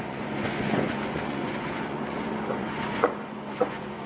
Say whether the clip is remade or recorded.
remade